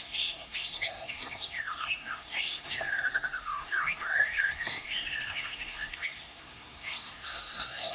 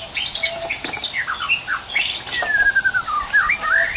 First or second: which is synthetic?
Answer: first